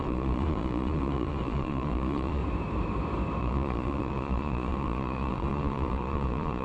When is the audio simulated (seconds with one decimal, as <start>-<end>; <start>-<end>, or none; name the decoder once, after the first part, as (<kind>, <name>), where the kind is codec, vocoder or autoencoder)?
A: 0.0-2.4 (vocoder, Vocos); 3.4-6.6